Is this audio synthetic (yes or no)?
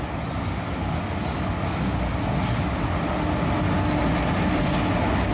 no